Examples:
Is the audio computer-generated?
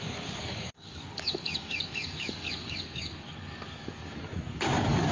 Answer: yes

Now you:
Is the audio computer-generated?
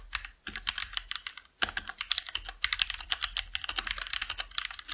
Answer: no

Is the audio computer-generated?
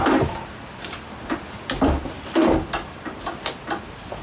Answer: no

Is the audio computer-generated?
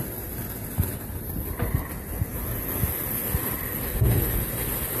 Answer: no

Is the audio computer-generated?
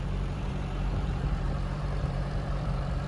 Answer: yes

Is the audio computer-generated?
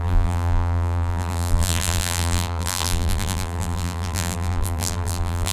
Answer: yes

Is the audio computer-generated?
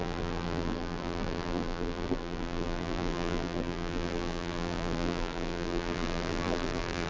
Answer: yes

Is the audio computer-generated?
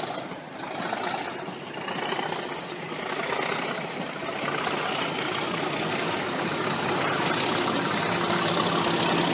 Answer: no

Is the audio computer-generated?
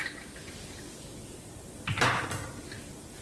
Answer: no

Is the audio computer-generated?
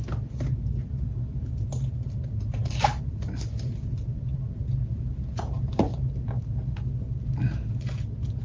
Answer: no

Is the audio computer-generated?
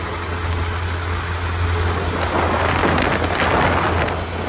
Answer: no